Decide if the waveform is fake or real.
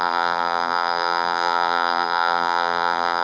fake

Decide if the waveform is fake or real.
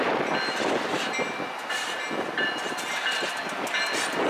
real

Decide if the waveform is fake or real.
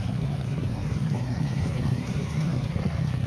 fake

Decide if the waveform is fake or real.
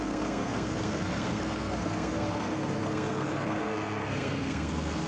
fake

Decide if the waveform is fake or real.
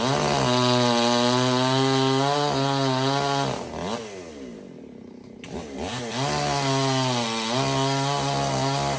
real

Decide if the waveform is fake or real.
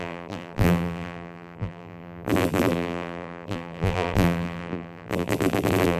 fake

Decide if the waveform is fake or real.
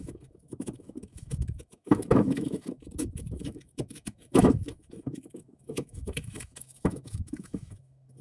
fake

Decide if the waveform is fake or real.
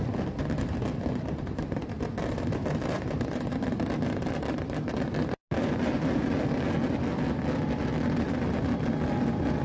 real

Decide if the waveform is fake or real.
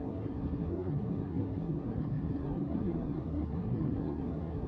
fake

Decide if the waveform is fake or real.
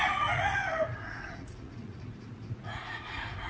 fake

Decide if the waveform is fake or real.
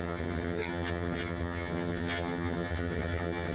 fake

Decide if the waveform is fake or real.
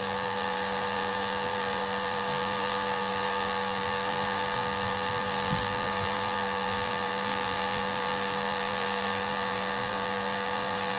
fake